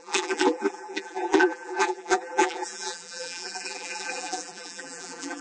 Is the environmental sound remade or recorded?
remade